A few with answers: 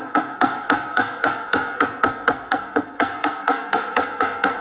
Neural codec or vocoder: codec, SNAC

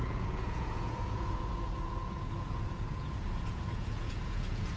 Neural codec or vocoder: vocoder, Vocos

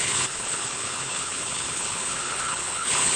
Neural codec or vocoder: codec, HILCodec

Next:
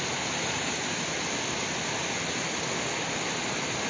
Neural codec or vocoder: none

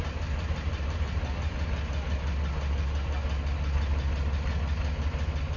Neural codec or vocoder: none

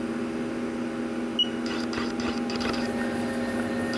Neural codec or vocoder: none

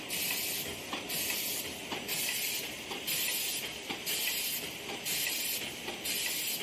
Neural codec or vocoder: none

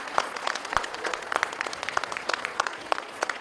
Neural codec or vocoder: vocoder, Vocos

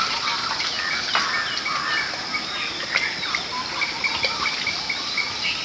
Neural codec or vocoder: none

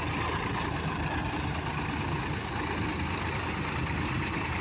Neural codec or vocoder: none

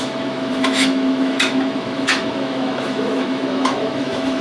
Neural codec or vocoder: autoencoder, DAC-VAE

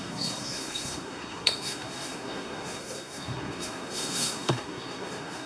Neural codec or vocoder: codec, SNAC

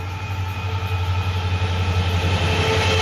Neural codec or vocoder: none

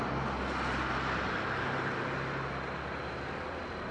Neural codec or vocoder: none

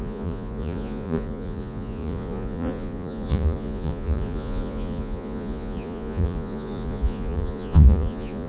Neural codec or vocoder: vocoder, Vocos